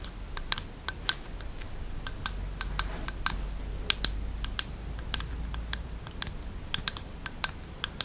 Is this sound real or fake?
real